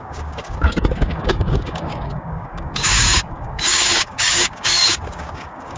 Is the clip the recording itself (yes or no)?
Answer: no